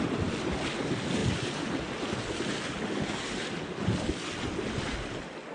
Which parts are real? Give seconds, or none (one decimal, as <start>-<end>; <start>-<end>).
0.0-5.5